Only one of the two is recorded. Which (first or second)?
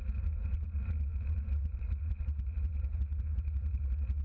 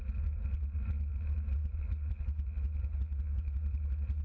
second